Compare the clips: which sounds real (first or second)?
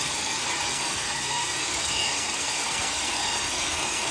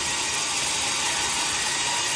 second